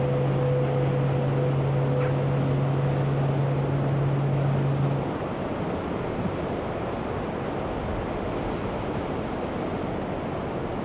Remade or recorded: recorded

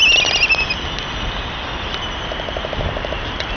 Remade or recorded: recorded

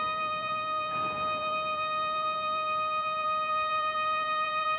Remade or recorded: remade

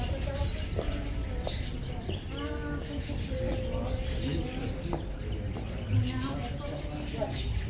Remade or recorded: recorded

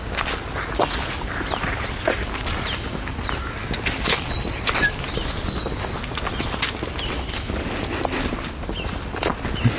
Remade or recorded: recorded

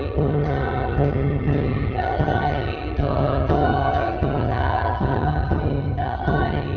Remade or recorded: remade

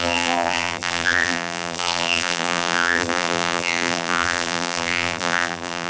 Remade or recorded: remade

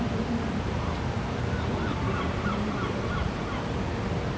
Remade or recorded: remade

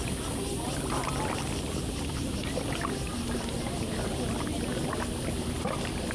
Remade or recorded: recorded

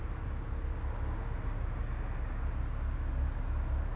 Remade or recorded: recorded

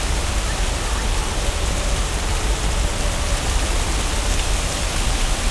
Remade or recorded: recorded